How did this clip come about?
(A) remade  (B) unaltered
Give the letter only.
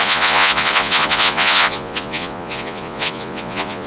A